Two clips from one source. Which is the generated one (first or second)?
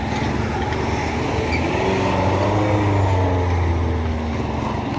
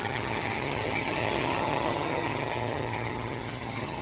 second